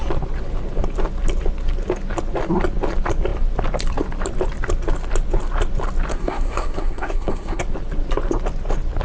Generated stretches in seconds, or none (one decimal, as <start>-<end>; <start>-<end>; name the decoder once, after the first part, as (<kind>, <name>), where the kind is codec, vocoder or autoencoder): 6.1-7.6 (codec, SNAC)